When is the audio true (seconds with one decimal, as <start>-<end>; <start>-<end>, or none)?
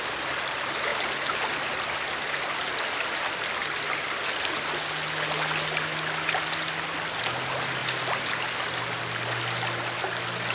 0.0-10.5